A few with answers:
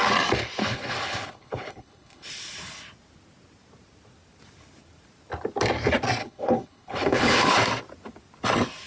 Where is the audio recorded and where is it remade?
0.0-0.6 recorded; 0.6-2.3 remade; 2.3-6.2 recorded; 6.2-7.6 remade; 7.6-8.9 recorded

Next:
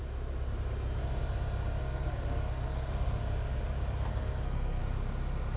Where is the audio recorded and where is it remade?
0.0-1.8 recorded; 1.8-3.2 remade; 3.2-4.1 recorded; 4.1-4.8 remade; 4.8-5.6 recorded